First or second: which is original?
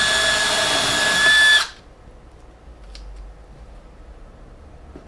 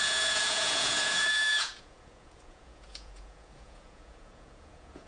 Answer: first